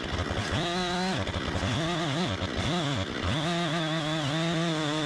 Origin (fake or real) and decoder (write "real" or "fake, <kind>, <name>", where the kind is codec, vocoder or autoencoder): real